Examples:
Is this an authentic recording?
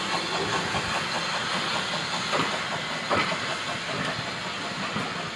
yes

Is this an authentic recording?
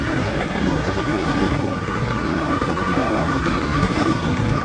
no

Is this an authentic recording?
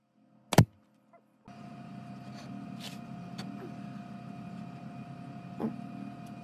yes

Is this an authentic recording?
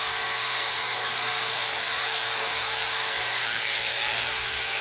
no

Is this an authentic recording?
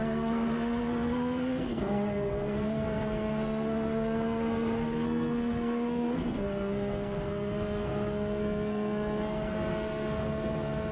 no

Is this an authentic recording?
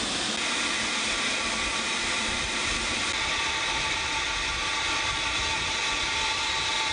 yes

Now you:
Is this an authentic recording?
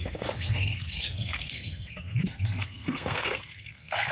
no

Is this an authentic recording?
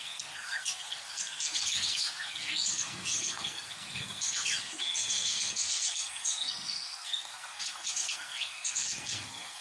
no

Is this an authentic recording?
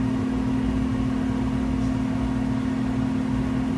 yes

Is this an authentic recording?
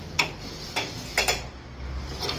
yes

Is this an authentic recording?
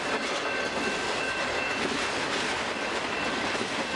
yes